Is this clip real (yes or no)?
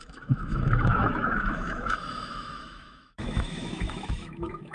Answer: no